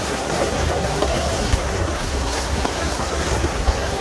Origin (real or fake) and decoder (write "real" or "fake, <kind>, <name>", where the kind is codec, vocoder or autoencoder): fake, codec, SNAC